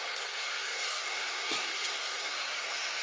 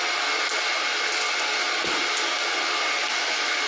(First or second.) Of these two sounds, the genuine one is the second